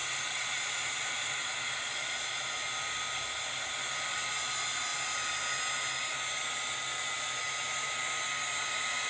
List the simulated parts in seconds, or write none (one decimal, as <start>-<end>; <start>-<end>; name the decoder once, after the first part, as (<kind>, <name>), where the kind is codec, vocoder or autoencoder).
none